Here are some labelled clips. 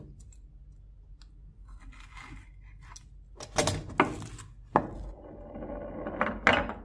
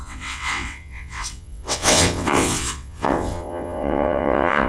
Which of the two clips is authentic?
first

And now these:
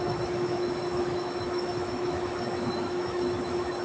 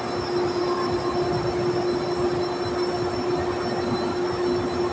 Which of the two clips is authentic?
second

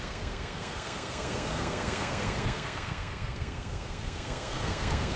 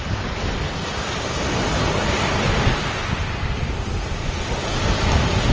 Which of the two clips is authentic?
second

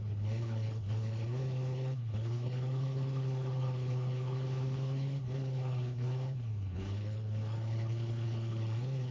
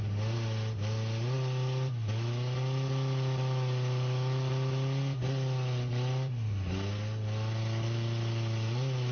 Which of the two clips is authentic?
second